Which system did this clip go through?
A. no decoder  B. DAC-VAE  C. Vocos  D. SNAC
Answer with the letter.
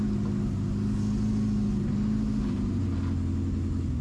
A